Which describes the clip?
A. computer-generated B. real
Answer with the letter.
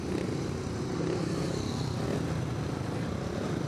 B